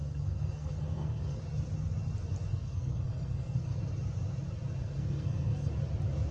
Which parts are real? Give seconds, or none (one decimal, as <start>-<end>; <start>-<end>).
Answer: 1.4-2.5; 3.8-4.8; 5.7-6.3